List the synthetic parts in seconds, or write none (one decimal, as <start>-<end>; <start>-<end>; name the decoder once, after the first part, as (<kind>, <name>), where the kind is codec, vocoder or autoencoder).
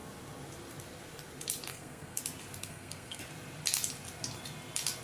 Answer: 1.7-2.2 (codec, SNAC); 2.6-3.2